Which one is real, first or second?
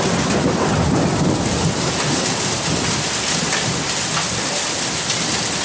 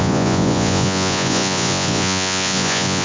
first